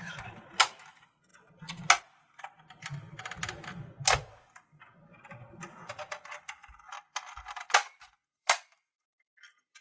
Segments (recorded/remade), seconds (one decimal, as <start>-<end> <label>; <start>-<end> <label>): 0.0-6.6 recorded; 6.6-9.4 remade; 9.4-9.8 recorded